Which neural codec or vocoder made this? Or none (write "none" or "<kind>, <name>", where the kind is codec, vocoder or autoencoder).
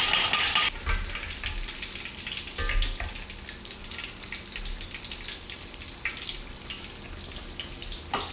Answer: none